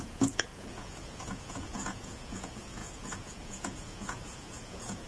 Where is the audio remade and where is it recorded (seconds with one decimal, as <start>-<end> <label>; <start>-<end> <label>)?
0.0-5.1 remade